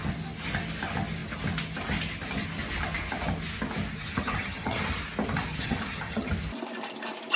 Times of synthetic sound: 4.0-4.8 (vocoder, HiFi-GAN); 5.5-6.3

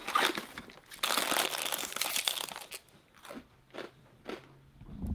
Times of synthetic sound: none

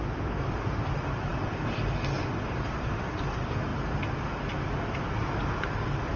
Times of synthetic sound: none

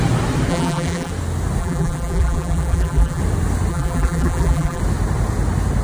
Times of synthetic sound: 0.5-1.1 (vocoder, BigVGAN v2); 1.6-3.2; 3.7-4.8

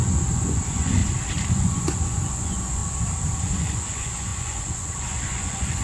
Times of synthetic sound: 0.0-1.0 (vocoder, Vocos); 1.5-2.8; 3.4-5.8

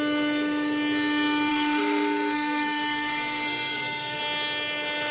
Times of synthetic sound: 1.5-4.2 (codec, SNAC)